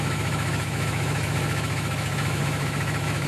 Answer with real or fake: fake